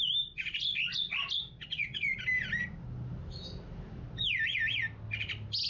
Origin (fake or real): real